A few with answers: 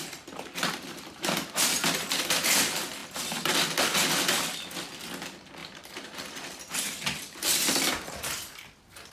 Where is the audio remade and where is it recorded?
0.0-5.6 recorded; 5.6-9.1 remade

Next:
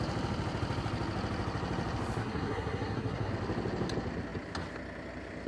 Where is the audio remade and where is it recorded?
0.0-2.2 recorded; 2.2-3.3 remade; 3.3-5.5 recorded